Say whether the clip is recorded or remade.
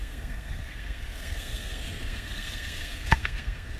remade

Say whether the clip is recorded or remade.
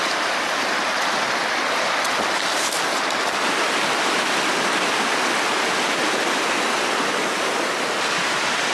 recorded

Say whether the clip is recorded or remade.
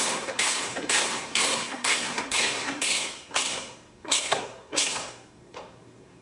remade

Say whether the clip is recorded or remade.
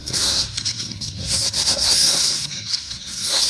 remade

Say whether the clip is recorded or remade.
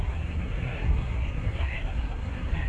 remade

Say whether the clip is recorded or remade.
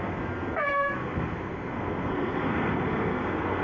remade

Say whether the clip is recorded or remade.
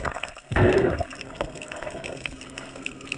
remade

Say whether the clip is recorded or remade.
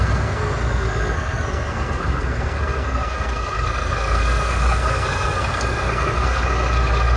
remade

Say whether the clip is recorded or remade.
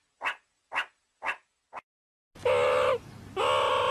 recorded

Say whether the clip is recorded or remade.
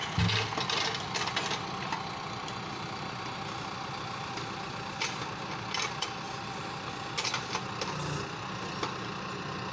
recorded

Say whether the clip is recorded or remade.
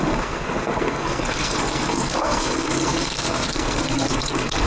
remade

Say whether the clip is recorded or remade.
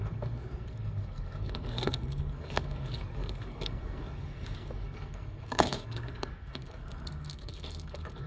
remade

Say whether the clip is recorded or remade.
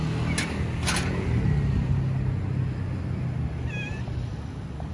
recorded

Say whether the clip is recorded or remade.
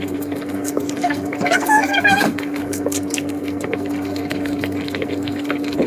remade